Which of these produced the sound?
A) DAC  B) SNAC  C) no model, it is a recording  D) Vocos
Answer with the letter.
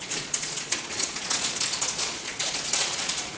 D